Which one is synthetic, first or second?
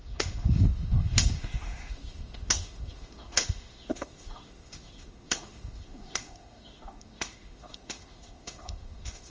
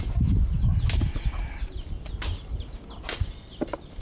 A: first